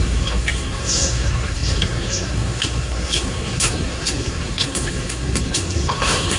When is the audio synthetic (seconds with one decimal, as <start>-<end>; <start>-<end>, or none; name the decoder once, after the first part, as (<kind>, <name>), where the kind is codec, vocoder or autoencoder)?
0.0-6.4 (codec, SNAC)